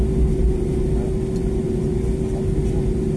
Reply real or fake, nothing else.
real